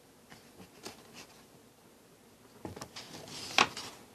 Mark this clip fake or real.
real